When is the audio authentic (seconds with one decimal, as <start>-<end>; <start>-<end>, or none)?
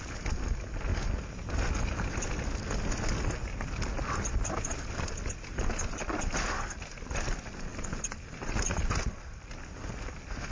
0.0-10.5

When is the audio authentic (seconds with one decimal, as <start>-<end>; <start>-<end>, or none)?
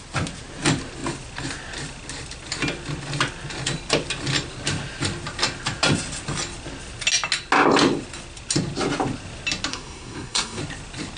0.0-9.7; 10.6-11.2